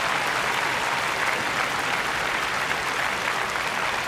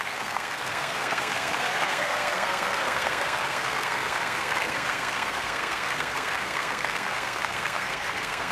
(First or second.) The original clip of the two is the first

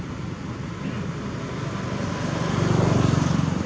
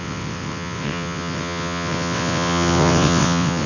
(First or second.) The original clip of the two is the first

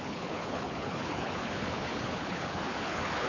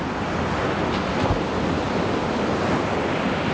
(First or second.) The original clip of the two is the second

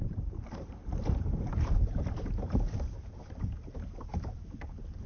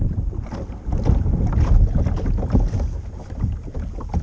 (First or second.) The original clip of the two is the second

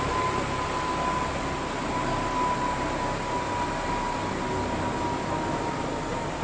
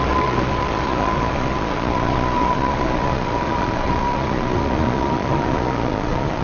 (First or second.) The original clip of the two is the first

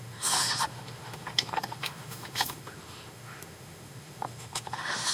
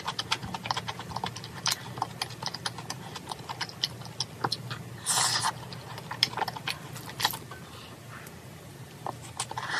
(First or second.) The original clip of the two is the second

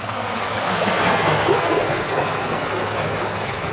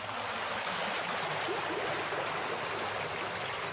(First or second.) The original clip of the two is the second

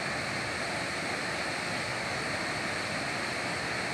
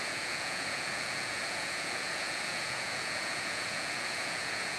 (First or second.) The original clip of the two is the first